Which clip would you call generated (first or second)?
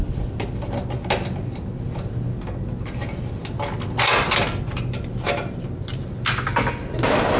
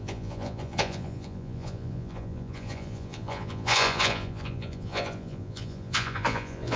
second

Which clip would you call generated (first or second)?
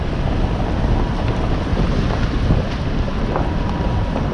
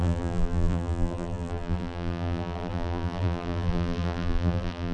second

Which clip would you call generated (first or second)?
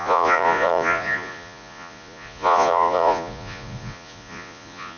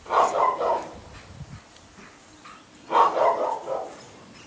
first